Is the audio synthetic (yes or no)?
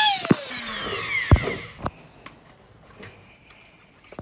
no